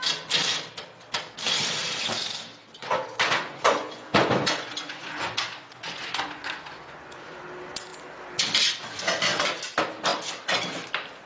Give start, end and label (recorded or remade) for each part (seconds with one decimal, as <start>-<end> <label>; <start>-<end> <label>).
0.0-2.8 recorded; 2.8-7.4 remade; 7.4-11.3 recorded